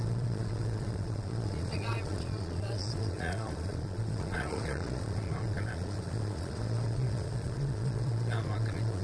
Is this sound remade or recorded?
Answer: remade